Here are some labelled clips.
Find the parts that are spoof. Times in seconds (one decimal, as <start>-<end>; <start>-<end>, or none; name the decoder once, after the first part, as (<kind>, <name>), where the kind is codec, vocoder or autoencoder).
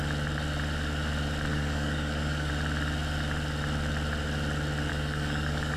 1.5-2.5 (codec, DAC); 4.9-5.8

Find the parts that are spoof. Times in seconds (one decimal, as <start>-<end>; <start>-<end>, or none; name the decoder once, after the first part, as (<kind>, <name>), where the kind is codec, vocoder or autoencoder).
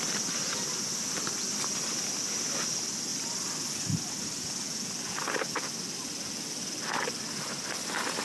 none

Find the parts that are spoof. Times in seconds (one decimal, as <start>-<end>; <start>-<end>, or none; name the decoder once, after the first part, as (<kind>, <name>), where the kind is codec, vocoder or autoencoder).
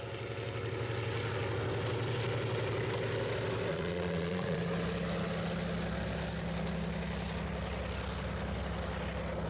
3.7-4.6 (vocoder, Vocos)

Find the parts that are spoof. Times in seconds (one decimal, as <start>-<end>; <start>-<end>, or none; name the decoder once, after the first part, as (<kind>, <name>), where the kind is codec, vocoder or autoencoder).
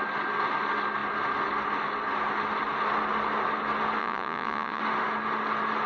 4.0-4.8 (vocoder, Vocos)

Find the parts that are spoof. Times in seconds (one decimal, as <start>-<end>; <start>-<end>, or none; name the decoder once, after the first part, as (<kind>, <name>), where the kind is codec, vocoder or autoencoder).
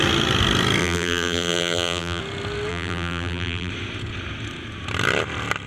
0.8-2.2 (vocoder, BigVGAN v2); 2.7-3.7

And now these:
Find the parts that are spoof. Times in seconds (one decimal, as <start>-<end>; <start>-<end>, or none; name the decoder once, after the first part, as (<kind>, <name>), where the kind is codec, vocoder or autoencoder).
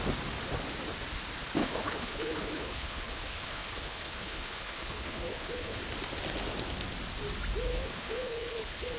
1.6-5.8 (codec, HILCodec); 7.7-9.0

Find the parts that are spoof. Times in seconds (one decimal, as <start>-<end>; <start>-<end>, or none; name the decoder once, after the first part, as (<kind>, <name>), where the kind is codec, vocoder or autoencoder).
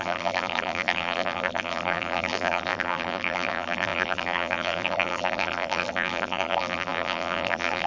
0.0-7.9 (vocoder, BigVGAN v2)